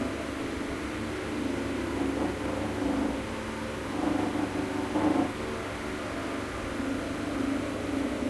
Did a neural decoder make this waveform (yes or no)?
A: no